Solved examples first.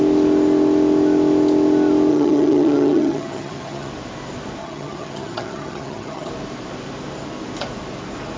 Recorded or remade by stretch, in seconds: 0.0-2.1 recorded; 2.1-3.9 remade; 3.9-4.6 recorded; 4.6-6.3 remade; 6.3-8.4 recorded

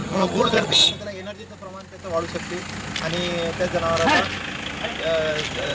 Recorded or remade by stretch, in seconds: 0.0-0.9 remade; 0.9-5.7 recorded

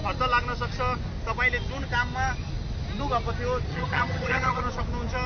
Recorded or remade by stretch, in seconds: 0.0-3.7 recorded; 3.7-4.6 remade; 4.6-5.3 recorded

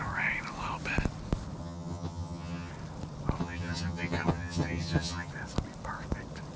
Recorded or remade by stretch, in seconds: 0.0-1.6 recorded; 1.6-2.7 remade; 2.7-3.4 recorded; 3.4-5.3 remade; 5.3-6.6 recorded

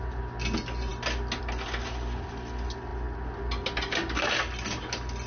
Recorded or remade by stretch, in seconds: 0.0-5.3 recorded

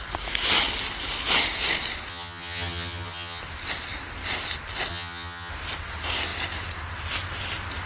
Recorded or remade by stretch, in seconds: 0.0-2.1 recorded; 2.1-3.4 remade; 3.4-4.9 recorded; 4.9-5.5 remade; 5.5-7.9 recorded

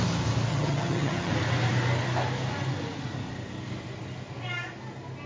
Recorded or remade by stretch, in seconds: 0.0-0.5 recorded; 0.5-1.3 remade; 1.3-5.3 recorded